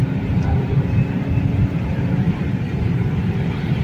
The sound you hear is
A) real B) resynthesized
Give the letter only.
A